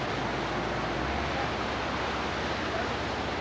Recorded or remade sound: recorded